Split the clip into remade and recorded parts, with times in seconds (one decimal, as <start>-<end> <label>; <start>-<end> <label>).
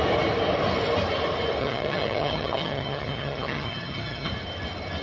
0.0-1.6 recorded; 1.6-4.3 remade; 4.3-5.0 recorded